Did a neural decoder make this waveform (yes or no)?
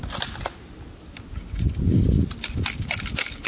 no